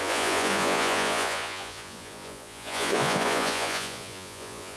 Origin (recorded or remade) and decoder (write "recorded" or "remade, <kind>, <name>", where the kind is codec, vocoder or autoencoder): remade, vocoder, Vocos